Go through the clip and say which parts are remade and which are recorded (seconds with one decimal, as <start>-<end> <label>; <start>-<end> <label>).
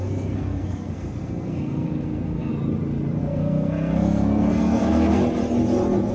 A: 0.0-2.5 remade; 2.5-3.2 recorded; 3.2-5.2 remade; 5.2-6.1 recorded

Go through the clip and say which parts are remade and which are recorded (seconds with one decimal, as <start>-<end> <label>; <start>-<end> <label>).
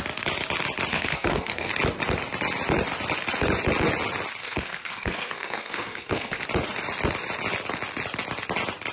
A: 0.0-0.9 recorded; 0.9-1.7 remade; 1.7-4.4 recorded; 4.4-6.4 remade; 6.4-8.9 recorded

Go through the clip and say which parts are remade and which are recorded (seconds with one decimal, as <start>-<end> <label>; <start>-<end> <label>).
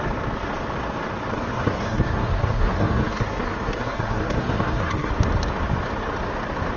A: 0.0-1.3 recorded; 1.3-5.1 remade; 5.1-6.8 recorded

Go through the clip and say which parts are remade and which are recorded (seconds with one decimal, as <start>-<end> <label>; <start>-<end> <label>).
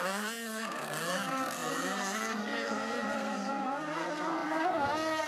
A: 0.0-5.3 remade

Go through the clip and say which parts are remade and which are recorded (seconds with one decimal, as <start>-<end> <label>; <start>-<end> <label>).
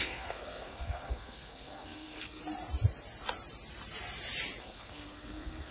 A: 0.0-2.4 remade; 2.4-4.6 recorded; 4.6-5.7 remade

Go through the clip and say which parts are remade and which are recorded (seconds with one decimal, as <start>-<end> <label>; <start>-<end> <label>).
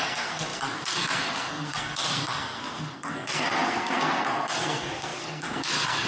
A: 0.0-6.1 remade